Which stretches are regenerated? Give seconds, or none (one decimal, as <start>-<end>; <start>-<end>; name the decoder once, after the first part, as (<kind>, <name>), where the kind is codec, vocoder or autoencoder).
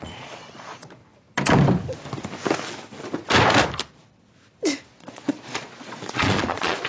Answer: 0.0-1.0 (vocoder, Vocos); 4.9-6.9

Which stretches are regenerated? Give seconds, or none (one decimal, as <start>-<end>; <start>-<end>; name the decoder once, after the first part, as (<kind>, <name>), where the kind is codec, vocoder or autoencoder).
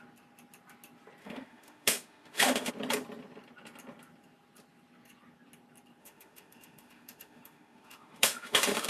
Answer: 1.2-2.7 (autoencoder, DAC-VAE); 6.0-8.9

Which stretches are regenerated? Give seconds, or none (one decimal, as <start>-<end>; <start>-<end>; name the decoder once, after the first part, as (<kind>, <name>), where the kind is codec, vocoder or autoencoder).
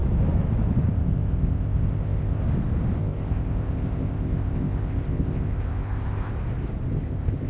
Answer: 0.9-2.4 (codec, ZipCodec); 3.0-6.3; 7.0-7.5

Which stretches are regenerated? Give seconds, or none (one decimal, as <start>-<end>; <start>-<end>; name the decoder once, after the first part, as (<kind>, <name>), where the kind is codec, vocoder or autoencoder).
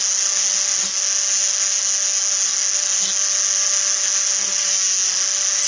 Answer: none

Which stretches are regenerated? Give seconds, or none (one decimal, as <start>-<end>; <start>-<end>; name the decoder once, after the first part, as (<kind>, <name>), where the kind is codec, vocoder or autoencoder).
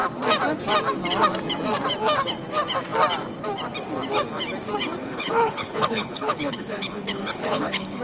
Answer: 5.0-8.0 (codec, HILCodec)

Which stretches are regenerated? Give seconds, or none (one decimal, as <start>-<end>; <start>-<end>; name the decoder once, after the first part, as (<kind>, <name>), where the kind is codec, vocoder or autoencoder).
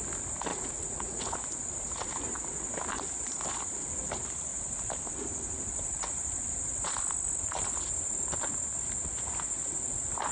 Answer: 0.5-1.5 (vocoder, Vocos)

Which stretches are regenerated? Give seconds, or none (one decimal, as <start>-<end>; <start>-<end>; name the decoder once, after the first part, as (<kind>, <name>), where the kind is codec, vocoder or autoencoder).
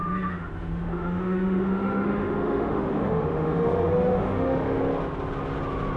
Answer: 0.0-4.8 (autoencoder, DAC-VAE)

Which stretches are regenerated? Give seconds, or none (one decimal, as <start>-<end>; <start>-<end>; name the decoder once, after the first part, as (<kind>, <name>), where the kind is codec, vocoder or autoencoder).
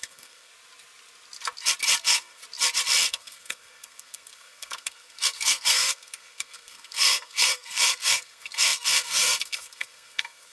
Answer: 0.0-0.5 (codec, SNAC); 2.0-2.4; 3.1-10.5